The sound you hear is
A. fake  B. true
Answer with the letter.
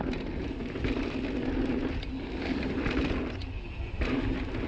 B